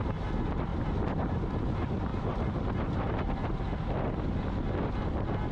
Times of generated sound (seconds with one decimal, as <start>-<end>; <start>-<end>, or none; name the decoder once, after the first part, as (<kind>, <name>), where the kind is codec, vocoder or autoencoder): 0.7-1.3 (vocoder, BigVGAN v2)